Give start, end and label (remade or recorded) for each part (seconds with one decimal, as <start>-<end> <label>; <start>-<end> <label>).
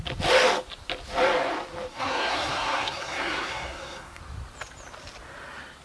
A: 0.0-1.9 recorded; 1.9-4.2 remade; 4.2-5.8 recorded